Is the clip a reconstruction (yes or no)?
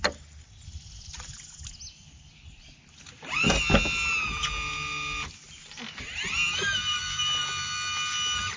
no